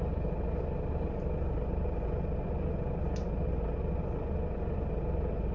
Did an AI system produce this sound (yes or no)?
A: no